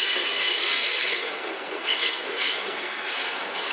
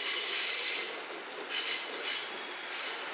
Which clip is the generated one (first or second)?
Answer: first